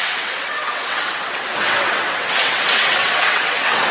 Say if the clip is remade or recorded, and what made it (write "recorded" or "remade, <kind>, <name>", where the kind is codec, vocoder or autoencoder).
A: remade, vocoder, WaveNeXt